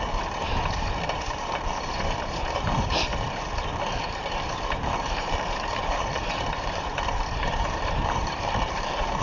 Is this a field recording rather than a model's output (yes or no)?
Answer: no